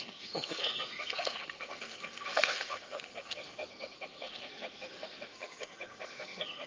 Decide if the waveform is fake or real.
fake